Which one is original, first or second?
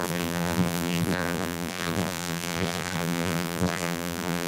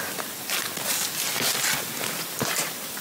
second